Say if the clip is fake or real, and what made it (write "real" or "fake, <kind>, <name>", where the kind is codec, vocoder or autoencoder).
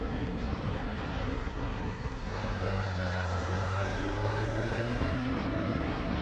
fake, codec, SNAC